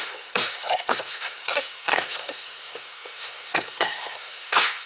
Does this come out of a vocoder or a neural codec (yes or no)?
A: yes